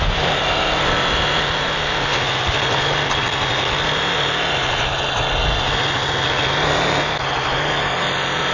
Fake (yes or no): no